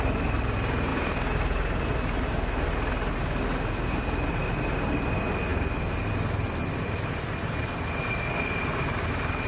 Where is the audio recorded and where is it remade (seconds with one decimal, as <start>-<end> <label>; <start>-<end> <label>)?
0.0-9.5 recorded